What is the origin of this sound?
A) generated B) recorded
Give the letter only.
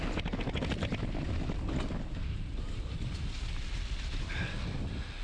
B